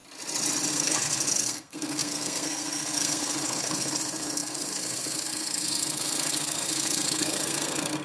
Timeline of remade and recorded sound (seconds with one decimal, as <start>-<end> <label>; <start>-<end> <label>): 0.0-0.7 recorded; 0.7-8.0 remade